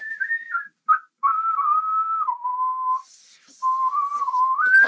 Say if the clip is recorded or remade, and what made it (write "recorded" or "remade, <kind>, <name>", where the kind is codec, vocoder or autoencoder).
recorded